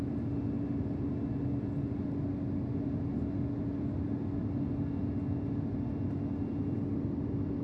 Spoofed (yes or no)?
no